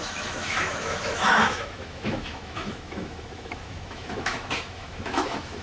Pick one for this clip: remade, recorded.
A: remade